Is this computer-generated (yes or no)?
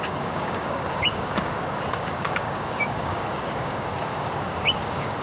yes